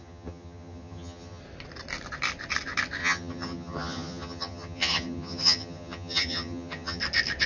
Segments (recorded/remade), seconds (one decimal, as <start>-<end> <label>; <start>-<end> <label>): 0.0-1.4 remade; 1.4-3.0 recorded; 3.0-7.0 remade; 7.0-7.5 recorded